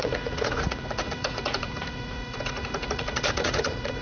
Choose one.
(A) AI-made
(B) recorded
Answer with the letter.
A